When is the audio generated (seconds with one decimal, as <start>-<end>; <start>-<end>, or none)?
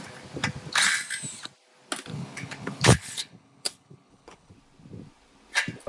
2.1-4.5